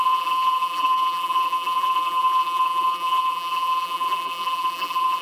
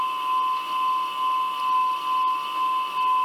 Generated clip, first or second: first